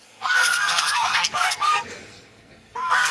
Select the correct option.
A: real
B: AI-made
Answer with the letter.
B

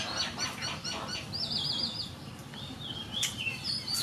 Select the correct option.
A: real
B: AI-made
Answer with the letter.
B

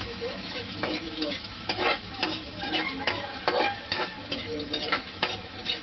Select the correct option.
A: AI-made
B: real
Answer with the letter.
A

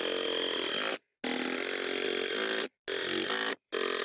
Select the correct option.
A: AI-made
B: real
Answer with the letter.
B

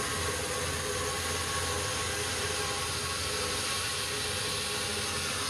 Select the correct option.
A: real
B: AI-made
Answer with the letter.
A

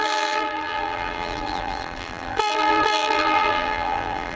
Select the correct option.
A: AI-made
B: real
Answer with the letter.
A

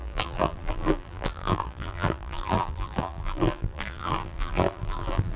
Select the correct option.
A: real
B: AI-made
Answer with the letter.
B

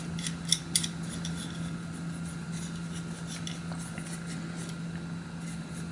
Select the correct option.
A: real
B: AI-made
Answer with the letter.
A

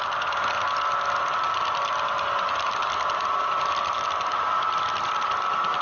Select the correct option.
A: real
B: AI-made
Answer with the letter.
A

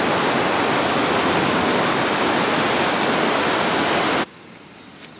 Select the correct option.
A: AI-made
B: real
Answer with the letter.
B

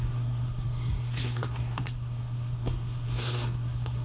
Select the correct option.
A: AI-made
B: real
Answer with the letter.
A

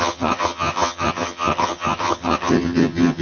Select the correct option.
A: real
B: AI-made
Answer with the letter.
B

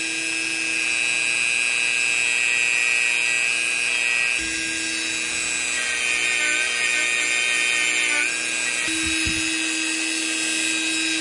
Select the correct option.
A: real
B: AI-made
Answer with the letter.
A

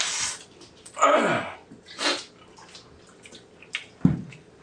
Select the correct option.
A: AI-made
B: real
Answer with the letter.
B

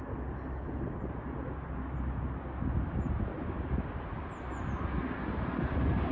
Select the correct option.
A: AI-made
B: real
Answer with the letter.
B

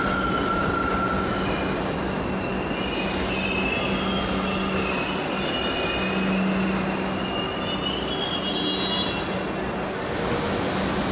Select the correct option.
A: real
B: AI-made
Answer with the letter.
A